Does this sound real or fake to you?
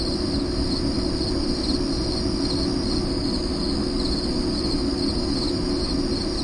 real